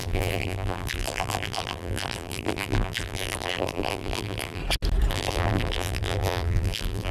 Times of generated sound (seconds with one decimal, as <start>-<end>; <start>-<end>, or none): 0.0-4.6; 5.1-7.1